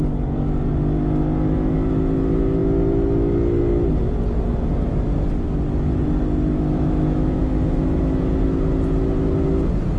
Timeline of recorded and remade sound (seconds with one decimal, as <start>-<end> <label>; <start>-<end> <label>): 0.0-6.5 recorded; 6.5-8.0 remade; 8.0-10.0 recorded